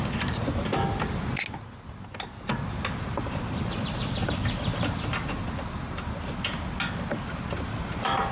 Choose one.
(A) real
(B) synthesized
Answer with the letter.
A